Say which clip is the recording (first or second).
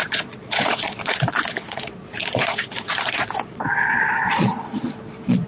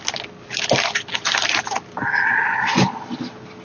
second